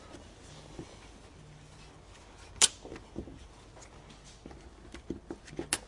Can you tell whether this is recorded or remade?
recorded